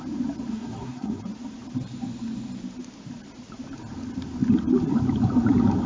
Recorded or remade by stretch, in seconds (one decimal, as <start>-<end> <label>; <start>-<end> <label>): 0.0-0.5 recorded; 0.5-1.2 remade; 1.2-5.9 recorded